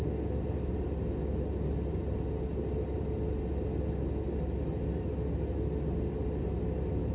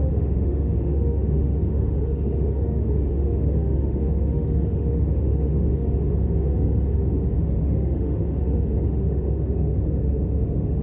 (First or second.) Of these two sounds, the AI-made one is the second